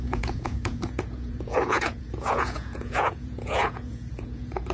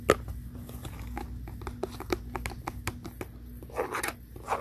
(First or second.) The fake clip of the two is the first